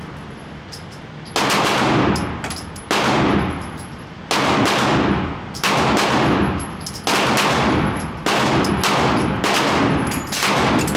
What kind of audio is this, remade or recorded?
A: recorded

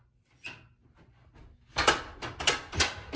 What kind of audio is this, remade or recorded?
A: recorded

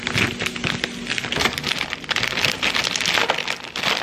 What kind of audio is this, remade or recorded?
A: recorded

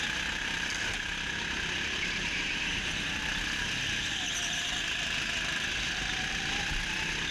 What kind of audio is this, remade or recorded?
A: recorded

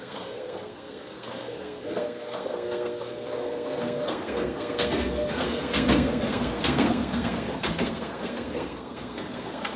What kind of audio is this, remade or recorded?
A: remade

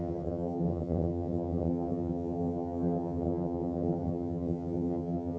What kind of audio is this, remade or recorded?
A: remade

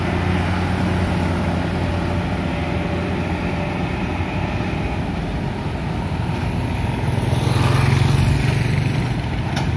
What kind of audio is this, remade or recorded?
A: recorded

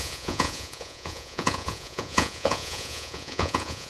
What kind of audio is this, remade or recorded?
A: remade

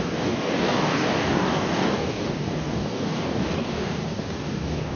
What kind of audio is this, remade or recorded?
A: remade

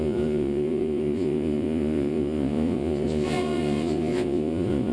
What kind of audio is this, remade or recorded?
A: remade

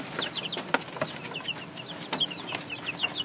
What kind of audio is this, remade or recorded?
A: recorded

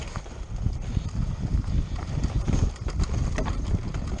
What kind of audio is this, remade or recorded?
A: recorded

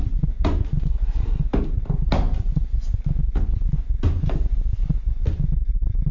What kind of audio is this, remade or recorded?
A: recorded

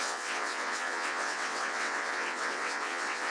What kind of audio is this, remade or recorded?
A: remade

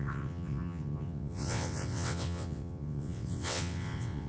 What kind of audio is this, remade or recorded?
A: remade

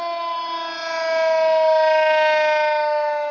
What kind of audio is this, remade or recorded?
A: recorded